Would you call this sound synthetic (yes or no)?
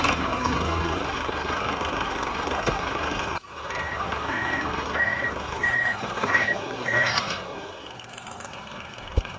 yes